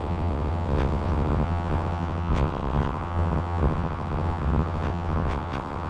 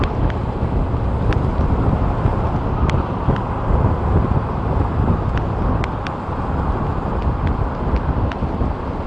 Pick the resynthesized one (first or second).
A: first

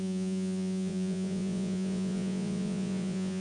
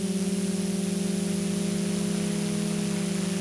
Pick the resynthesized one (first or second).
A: first